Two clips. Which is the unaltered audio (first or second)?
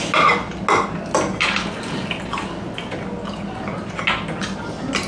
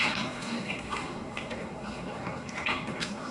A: first